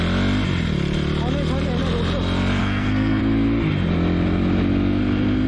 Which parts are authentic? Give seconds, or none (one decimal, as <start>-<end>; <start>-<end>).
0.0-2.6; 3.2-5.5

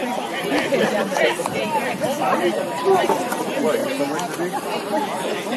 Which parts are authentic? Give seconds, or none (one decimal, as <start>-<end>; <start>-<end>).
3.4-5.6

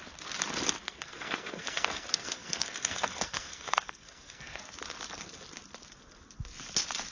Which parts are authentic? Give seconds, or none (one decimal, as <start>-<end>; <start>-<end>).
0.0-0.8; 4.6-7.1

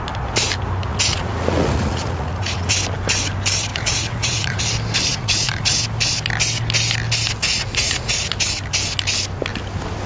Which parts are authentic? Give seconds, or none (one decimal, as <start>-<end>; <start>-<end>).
0.0-0.9; 2.7-3.7; 4.6-5.1; 5.8-7.5; 8.3-10.1

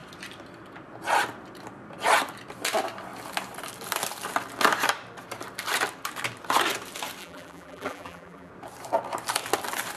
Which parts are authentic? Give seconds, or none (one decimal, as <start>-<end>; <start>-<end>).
0.0-7.2; 8.5-10.0

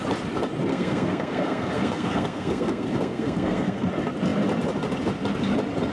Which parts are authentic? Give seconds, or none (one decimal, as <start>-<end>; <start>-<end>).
0.0-0.7; 3.9-5.9

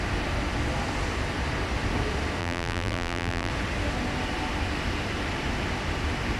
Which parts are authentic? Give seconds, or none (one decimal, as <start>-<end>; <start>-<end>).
0.0-2.4; 3.5-6.4